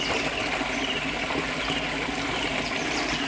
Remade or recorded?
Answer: recorded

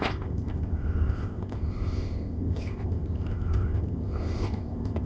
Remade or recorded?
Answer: remade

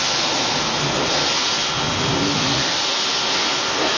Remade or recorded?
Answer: recorded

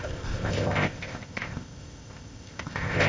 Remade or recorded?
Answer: remade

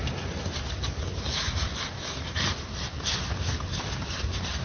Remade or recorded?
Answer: recorded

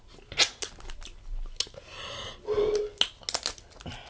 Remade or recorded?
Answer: recorded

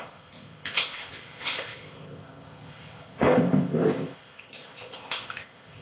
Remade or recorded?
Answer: remade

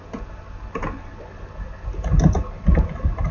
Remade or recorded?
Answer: recorded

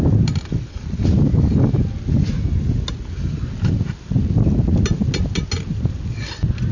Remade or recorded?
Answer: recorded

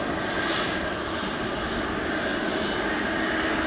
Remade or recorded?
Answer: recorded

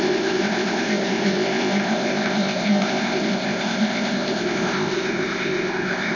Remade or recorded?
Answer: remade